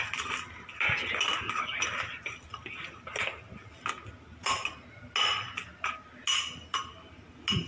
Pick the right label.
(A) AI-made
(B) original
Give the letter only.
B